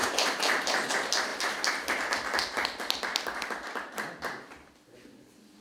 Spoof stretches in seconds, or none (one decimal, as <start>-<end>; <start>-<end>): 0.0-0.9